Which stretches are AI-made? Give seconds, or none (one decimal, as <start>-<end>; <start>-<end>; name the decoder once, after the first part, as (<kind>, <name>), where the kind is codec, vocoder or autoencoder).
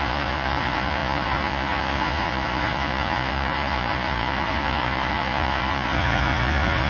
0.0-6.9 (vocoder, Vocos)